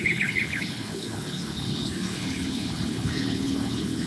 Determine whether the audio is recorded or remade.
remade